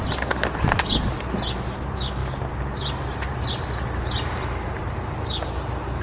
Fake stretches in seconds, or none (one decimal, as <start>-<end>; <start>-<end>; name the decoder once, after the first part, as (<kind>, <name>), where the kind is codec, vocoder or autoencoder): none